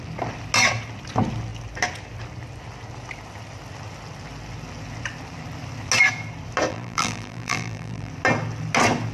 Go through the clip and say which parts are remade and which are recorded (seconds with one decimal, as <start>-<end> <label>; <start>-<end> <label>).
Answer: 0.0-6.7 recorded; 6.7-8.1 remade; 8.1-9.1 recorded